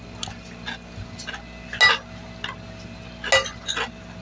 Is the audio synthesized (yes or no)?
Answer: no